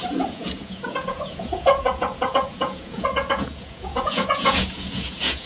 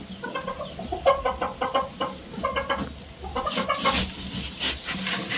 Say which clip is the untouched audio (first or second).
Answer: second